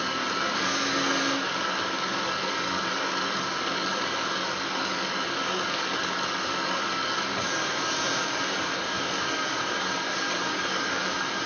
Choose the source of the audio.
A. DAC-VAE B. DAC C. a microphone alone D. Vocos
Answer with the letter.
B